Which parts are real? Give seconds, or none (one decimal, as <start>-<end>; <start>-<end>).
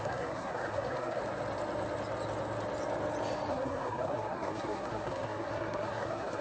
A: 1.2-3.5